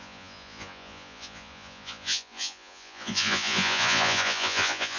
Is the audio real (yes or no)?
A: no